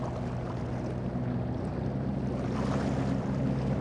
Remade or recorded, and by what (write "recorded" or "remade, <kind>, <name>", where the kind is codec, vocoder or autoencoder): recorded